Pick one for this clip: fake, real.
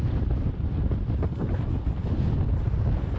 real